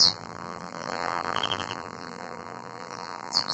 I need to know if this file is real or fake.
fake